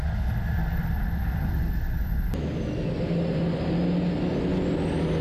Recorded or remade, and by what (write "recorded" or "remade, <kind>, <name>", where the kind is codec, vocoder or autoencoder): recorded